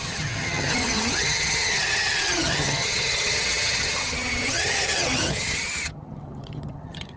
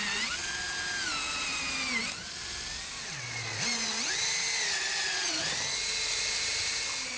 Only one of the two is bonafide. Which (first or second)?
second